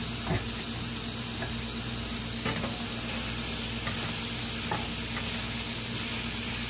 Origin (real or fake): real